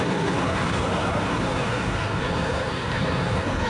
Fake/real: fake